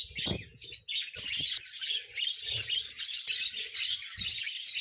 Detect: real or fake real